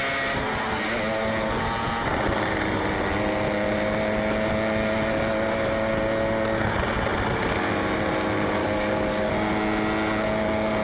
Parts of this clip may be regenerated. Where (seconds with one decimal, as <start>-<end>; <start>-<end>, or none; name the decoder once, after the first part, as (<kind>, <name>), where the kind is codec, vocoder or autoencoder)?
8.6-9.3 (codec, DAC)